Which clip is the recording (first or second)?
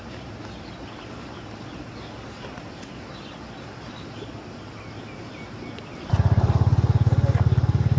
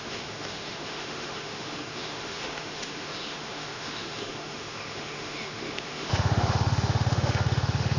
first